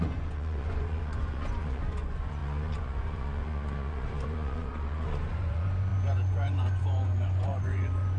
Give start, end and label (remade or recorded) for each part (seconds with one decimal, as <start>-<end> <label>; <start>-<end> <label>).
0.0-8.2 remade